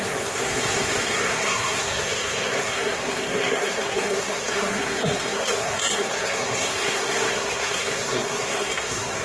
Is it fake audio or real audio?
fake